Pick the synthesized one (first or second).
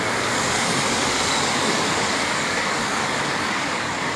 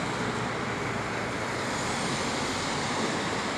first